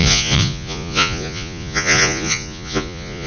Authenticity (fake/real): fake